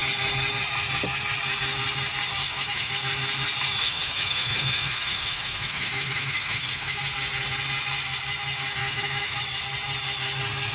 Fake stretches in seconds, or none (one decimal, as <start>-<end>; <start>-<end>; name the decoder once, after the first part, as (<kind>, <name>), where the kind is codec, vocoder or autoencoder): 2.4-2.9 (autoencoder, DAC-VAE); 3.8-7.0; 8.8-9.4